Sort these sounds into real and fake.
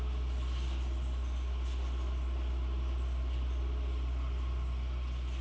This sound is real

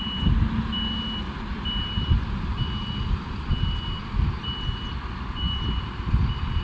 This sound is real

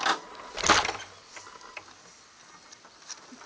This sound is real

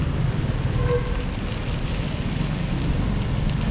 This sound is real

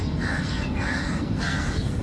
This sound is fake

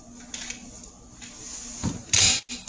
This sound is real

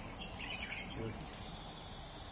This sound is real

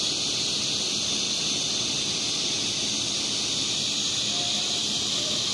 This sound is real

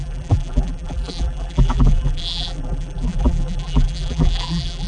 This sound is fake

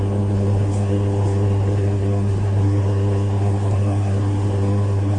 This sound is fake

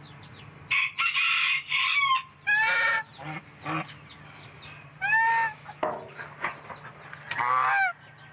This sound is real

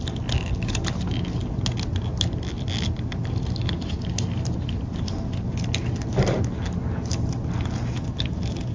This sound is real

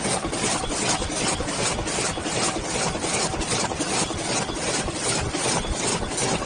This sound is real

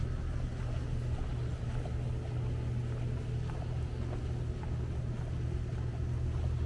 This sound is real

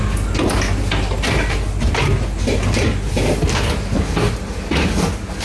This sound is real